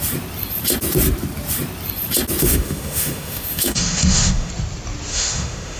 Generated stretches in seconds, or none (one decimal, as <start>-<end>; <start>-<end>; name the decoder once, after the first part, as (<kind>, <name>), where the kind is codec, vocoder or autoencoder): 2.4-4.5 (autoencoder, DAC-VAE); 5.1-5.8